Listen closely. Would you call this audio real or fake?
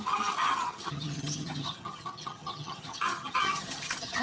fake